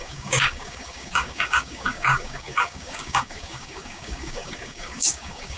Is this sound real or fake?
fake